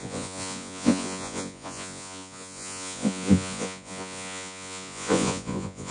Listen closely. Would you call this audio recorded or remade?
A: remade